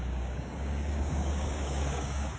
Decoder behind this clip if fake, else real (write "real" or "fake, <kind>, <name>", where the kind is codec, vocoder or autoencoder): fake, codec, DAC